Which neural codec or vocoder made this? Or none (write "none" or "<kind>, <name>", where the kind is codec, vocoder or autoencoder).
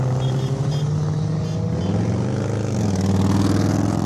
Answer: none